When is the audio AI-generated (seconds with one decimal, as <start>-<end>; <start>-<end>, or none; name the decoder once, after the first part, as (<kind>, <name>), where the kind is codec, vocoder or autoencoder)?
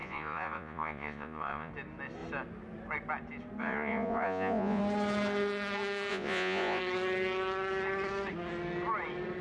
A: 0.0-1.7 (vocoder, Vocos); 3.6-4.8; 6.1-6.8